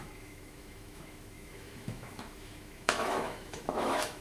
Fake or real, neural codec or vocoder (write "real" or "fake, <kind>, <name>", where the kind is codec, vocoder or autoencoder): fake, autoencoder, DAC-VAE